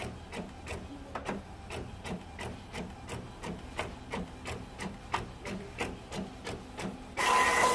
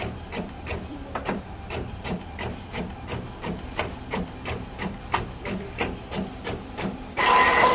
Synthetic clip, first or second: second